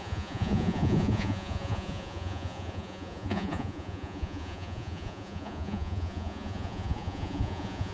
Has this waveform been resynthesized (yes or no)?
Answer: yes